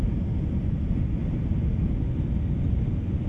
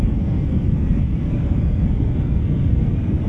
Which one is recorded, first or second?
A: first